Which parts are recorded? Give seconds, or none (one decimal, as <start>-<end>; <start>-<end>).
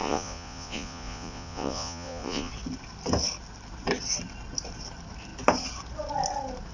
2.5-6.7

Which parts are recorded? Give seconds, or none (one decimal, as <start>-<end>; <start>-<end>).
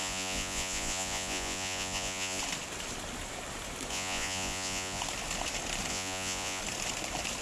2.4-3.9; 5.0-5.9; 6.6-7.4